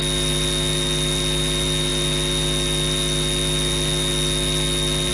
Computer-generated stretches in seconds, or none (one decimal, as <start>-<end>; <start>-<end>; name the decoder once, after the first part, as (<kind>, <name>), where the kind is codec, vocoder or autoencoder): none